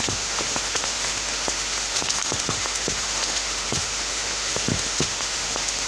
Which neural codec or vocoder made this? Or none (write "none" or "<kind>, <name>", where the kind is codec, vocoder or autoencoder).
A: autoencoder, DAC-VAE